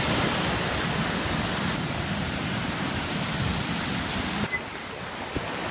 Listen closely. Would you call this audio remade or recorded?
recorded